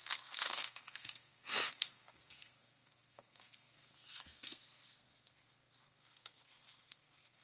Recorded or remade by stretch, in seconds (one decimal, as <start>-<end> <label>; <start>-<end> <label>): 0.0-7.4 remade